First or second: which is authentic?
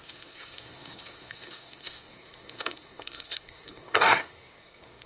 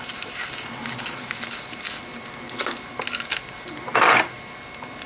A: second